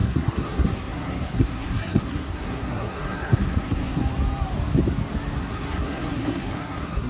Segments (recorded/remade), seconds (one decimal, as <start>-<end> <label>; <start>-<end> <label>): 0.0-4.0 remade; 4.0-5.4 recorded; 5.4-7.1 remade